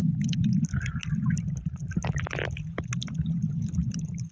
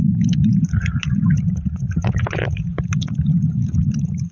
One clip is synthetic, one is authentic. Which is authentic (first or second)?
first